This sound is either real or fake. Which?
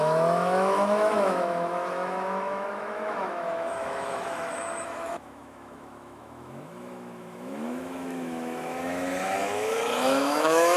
fake